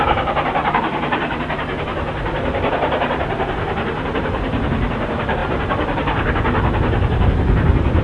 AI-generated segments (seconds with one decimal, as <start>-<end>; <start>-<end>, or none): 0.0-8.0